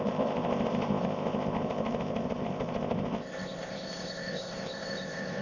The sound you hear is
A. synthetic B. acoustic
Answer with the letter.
A